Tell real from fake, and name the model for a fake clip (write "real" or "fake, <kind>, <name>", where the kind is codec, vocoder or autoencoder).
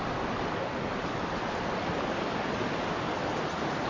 real